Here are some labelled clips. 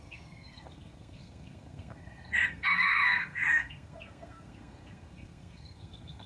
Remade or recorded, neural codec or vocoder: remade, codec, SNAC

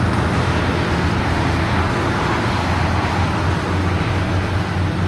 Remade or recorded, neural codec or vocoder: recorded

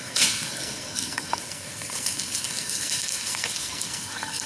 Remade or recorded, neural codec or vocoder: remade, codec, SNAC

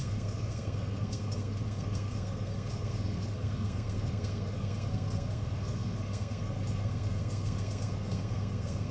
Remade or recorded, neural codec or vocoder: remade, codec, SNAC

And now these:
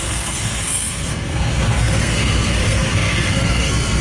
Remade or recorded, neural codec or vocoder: remade, codec, SNAC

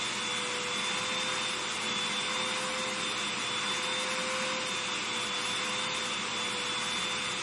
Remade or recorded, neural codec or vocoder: recorded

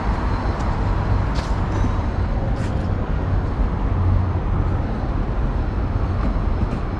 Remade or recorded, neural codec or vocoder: recorded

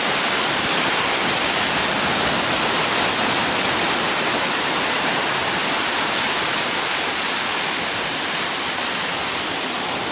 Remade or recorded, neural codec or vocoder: recorded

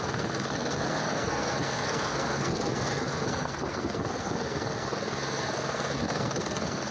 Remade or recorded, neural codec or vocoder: remade, codec, SNAC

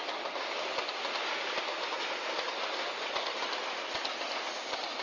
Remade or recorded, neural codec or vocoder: recorded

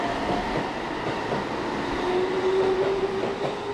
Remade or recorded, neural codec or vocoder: recorded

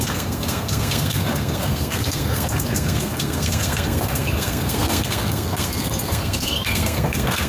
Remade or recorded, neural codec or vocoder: remade, codec, SNAC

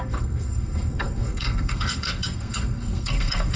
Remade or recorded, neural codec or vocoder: remade, codec, SNAC